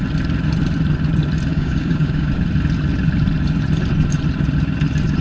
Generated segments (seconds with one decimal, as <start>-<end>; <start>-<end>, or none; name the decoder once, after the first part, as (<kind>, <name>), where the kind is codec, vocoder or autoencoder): 1.5-2.3 (codec, DAC)